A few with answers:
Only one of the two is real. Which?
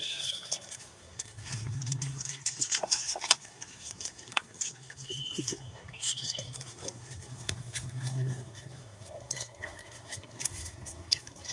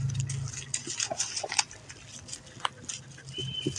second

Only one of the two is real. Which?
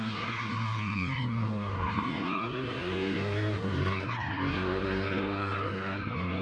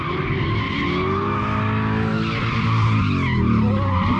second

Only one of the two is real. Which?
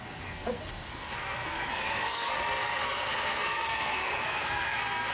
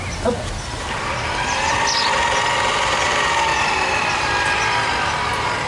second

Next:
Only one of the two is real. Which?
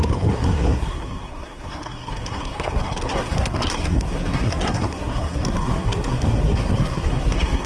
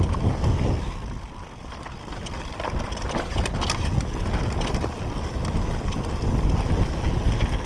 second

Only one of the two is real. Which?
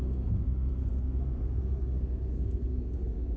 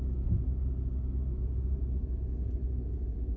second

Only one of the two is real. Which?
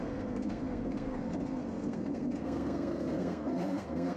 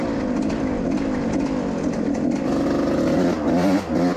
second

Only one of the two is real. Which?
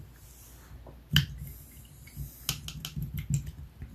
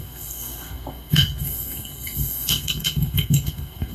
first